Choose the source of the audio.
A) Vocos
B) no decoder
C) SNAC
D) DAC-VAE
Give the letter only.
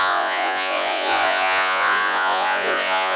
A